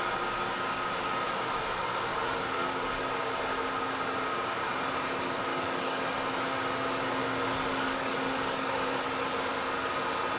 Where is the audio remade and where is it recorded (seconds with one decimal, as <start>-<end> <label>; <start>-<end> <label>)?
0.0-2.1 recorded; 2.1-2.9 remade; 2.9-5.5 recorded; 5.5-6.0 remade; 6.0-7.2 recorded; 7.2-9.1 remade; 9.1-10.4 recorded